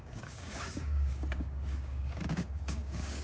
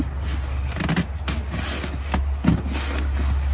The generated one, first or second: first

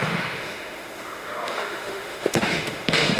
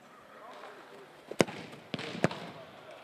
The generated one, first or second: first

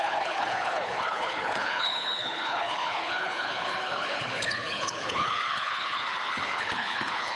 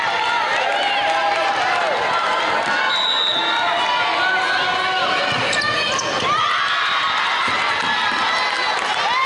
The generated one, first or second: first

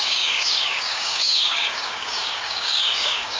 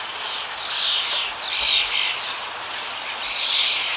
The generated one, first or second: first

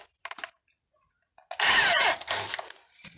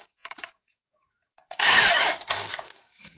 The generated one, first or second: second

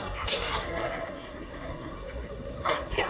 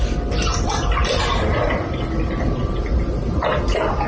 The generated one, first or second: first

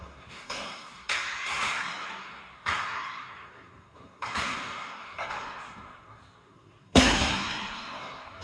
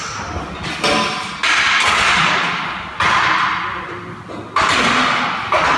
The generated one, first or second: first